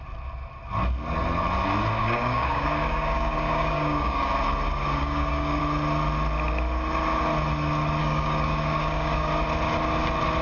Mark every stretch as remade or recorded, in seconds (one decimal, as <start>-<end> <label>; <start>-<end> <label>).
0.0-2.0 recorded; 2.0-4.3 remade; 4.3-5.0 recorded; 5.0-5.6 remade; 5.6-8.0 recorded; 8.0-9.3 remade; 9.3-10.4 recorded